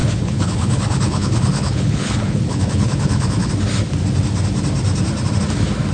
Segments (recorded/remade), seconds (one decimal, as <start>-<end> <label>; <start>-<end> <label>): 0.0-3.5 remade; 3.5-5.9 recorded